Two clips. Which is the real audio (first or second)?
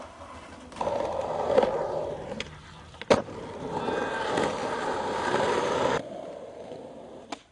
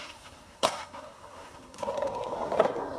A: first